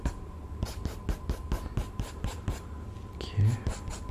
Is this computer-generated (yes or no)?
no